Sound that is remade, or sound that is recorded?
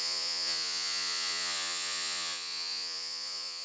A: remade